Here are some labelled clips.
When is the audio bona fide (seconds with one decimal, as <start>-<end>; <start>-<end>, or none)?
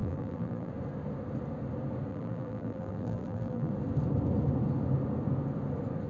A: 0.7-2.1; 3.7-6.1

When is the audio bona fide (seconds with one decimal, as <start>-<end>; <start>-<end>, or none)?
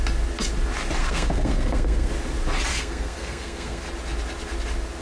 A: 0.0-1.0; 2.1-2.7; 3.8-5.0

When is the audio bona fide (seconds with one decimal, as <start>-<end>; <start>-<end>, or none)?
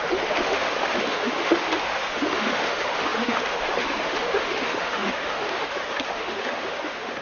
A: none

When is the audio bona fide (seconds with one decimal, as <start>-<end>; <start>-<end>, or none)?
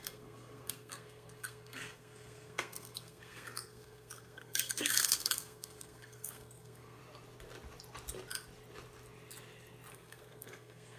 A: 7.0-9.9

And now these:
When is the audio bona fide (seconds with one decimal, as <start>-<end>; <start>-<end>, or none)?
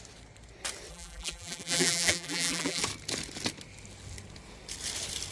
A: 0.0-0.9; 2.8-5.3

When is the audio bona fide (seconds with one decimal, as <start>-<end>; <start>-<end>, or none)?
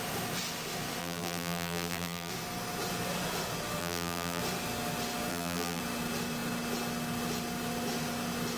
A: 0.0-1.0; 2.3-3.8; 4.4-5.3; 5.8-8.6